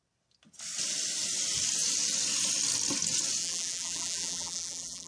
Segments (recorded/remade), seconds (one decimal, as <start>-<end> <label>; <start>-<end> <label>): 0.0-3.4 recorded; 3.4-5.1 remade